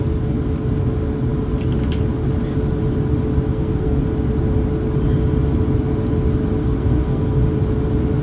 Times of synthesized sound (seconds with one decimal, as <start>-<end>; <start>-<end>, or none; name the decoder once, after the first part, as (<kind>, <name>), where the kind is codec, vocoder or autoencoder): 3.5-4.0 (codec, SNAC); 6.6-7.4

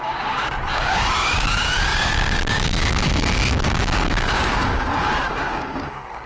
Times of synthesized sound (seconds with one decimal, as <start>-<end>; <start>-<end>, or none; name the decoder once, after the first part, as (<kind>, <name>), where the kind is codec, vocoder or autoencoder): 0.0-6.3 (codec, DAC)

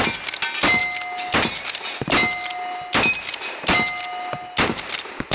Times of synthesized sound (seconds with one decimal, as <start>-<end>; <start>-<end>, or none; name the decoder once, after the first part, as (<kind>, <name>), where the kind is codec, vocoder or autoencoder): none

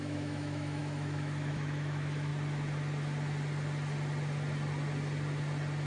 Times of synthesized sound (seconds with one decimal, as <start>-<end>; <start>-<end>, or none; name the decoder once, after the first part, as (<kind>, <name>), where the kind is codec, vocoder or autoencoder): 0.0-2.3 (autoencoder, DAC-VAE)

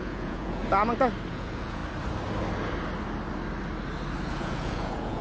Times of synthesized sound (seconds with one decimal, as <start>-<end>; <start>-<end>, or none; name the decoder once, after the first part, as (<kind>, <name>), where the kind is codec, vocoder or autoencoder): 0.0-0.6 (vocoder, Vocos); 1.3-1.8; 4.3-5.2

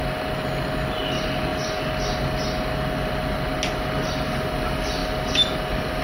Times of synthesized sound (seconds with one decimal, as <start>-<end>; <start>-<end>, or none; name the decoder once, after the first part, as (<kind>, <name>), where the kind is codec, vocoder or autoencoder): none

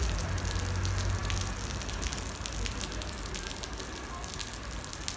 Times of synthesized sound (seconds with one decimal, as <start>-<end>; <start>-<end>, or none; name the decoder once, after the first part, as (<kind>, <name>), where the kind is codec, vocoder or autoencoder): none

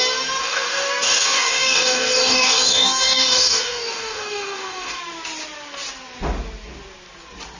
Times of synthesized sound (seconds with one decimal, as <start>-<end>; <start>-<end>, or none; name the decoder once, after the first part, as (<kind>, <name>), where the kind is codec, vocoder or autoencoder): 0.4-5.0 (codec, DAC)